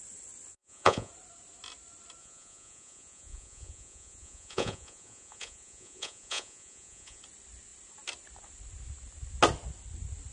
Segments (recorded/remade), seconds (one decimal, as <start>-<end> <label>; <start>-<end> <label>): 0.0-0.5 recorded; 0.5-1.1 remade; 1.1-2.2 recorded; 2.2-7.2 remade; 7.2-10.3 recorded